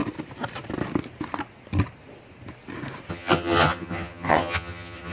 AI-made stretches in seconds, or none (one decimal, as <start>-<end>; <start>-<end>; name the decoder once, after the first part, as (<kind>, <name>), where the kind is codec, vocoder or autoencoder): 3.1-5.1 (vocoder, HiFi-GAN)